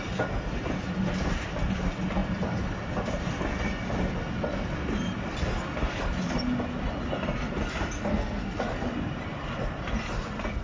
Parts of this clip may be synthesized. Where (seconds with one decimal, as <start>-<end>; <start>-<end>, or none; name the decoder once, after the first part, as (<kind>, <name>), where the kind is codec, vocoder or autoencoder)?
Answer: 8.1-8.6 (codec, SNAC)